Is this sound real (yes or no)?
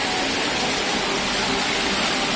yes